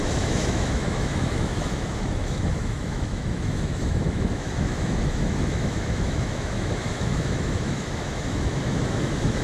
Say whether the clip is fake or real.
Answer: fake